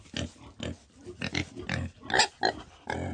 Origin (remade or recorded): recorded